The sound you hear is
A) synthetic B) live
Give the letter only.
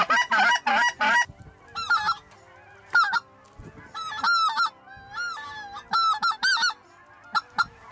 B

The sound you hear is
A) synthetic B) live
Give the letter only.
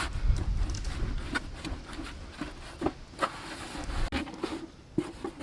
B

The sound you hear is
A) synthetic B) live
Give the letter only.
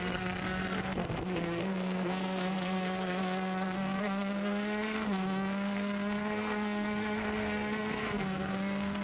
A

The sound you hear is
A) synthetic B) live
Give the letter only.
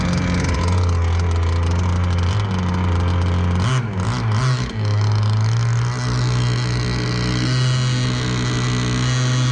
B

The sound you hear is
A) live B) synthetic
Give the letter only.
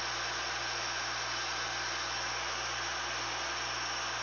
A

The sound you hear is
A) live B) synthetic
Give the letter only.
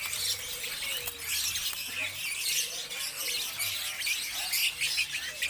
A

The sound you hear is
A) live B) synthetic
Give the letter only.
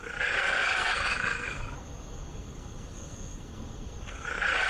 B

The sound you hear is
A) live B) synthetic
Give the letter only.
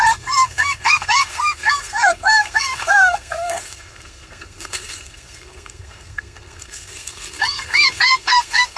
B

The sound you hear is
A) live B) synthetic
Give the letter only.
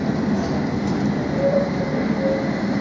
A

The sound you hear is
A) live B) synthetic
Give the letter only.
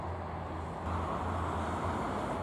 A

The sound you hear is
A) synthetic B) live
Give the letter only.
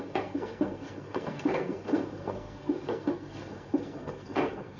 A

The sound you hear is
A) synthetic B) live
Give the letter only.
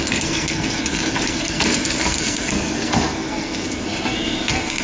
A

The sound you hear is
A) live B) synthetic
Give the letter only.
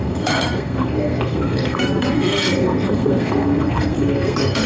B